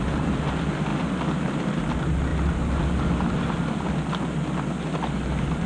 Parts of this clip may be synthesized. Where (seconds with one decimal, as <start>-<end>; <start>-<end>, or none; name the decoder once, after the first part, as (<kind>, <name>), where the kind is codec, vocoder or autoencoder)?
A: none